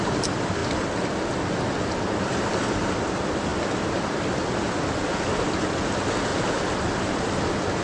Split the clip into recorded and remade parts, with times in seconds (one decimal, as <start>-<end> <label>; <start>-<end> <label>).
0.0-0.6 remade; 0.6-2.2 recorded; 2.2-6.3 remade; 6.3-6.8 recorded; 6.8-7.8 remade